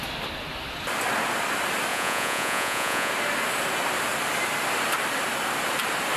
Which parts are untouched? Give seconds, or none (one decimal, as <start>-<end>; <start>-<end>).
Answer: 0.0-1.9; 3.1-6.2